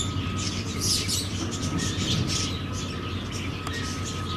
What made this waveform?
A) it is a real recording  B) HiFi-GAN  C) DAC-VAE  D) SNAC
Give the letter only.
A